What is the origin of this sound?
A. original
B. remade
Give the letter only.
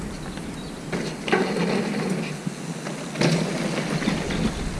A